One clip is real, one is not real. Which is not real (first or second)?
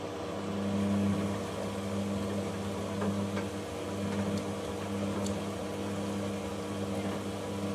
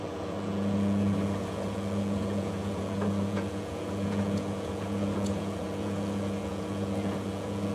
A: second